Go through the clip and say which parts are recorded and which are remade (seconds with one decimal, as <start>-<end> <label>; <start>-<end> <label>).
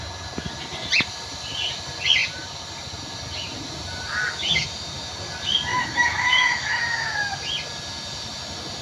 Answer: 0.0-5.7 recorded; 5.7-6.8 remade; 6.8-8.8 recorded